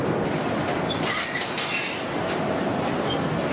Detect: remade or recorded recorded